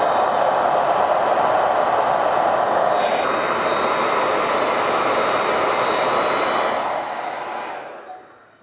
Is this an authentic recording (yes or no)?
yes